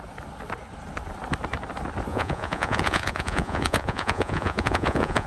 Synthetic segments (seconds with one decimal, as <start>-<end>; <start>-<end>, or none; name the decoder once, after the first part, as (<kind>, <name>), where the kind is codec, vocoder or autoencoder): 2.1-5.3 (vocoder, Vocos)

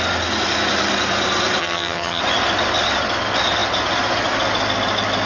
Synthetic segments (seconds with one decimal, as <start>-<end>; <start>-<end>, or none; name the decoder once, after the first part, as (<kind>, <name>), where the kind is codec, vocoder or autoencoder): 1.6-2.2 (vocoder, HiFi-GAN)

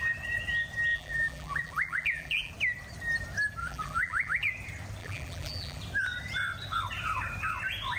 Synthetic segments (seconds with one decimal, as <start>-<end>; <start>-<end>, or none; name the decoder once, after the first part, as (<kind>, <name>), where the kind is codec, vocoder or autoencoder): 0.9-2.5 (vocoder, BigVGAN v2); 3.6-4.5; 5.0-5.8

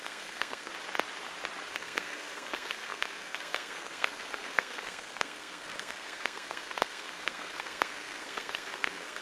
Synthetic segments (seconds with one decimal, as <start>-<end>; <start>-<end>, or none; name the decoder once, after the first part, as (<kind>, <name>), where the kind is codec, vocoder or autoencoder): 0.0-0.7 (codec, SNAC); 1.7-9.2